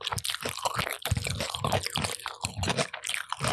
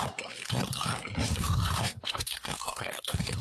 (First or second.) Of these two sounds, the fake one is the second